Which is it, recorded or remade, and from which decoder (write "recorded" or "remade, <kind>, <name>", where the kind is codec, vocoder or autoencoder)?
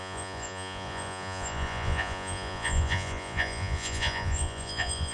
remade, vocoder, Vocos